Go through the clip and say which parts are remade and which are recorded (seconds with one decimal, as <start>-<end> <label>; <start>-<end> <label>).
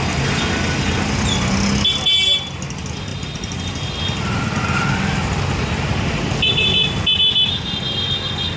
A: 0.0-8.6 recorded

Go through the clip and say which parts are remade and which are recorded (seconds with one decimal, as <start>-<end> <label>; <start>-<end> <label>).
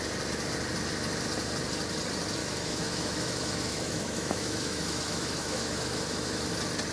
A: 0.0-2.4 recorded; 2.4-6.5 remade; 6.5-6.9 recorded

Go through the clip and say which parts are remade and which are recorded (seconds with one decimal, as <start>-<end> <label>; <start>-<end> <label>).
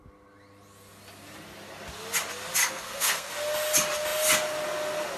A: 0.0-2.6 recorded; 2.6-3.3 remade; 3.3-5.2 recorded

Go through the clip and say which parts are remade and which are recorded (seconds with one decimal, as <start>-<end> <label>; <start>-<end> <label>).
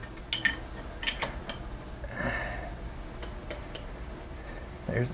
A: 0.0-3.4 recorded; 3.4-4.6 remade; 4.6-5.1 recorded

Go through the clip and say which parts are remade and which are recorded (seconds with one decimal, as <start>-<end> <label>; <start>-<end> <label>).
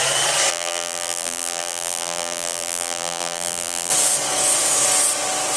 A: 0.0-0.5 recorded; 0.5-3.9 remade; 3.9-5.6 recorded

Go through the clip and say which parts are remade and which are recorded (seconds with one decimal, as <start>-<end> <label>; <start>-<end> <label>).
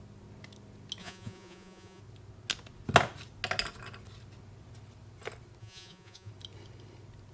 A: 0.0-1.0 recorded; 1.0-2.0 remade; 2.0-5.6 recorded; 5.6-6.3 remade; 6.3-7.3 recorded